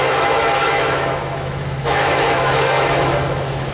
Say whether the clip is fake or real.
fake